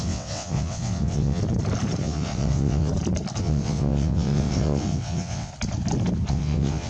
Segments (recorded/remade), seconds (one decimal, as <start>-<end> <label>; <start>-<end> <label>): 0.0-1.4 remade; 1.4-2.0 recorded; 2.0-2.9 remade; 2.9-3.4 recorded; 3.4-5.5 remade; 5.5-6.3 recorded; 6.3-6.9 remade

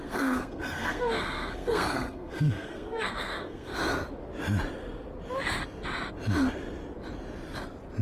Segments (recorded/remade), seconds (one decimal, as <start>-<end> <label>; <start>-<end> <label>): 0.0-3.7 remade; 3.7-8.0 recorded

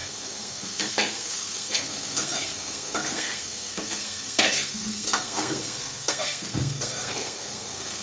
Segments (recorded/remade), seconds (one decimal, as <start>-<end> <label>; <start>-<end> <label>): 0.0-8.0 remade